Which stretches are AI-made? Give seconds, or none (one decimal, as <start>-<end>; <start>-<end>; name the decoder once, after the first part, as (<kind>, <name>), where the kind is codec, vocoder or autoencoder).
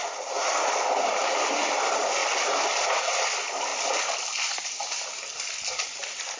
none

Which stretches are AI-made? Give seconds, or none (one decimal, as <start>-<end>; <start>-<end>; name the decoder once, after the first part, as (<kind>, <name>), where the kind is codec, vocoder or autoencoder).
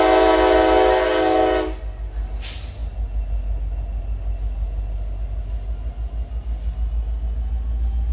none